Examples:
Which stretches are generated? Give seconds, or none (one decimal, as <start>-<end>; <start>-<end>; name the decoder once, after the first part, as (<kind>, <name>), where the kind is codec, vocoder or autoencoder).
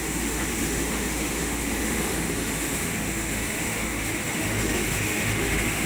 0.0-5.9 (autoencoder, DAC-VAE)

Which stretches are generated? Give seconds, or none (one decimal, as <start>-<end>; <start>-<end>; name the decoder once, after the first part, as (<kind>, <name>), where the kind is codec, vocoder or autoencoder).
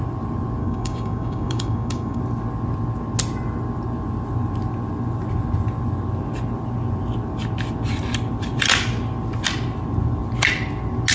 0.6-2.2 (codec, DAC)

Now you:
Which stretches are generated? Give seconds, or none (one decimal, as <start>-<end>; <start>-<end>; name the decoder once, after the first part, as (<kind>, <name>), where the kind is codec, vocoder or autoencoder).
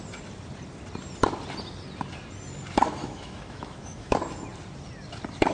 3.0-4.1 (autoencoder, DAC-VAE)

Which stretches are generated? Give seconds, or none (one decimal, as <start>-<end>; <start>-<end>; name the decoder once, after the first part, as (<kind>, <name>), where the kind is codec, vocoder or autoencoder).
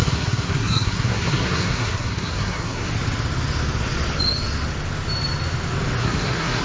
0.0-2.9 (codec, SNAC); 6.0-6.6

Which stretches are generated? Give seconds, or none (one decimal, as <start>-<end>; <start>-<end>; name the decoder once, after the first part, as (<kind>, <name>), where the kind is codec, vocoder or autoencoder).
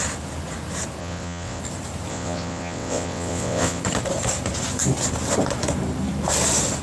1.0-1.6 (vocoder, WaveNeXt); 2.1-3.8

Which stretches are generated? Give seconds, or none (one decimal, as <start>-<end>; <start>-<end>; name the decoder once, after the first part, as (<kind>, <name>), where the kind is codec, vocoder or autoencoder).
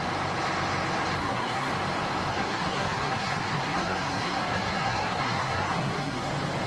1.2-1.7 (codec, SNAC); 2.3-6.3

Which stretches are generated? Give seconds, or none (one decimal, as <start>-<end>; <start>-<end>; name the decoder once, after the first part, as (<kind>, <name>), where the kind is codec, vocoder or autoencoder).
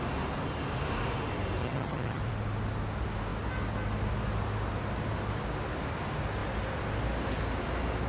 1.6-2.2 (vocoder, HiFi-GAN)